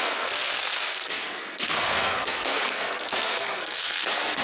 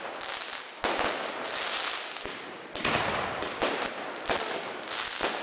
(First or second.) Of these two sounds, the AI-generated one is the first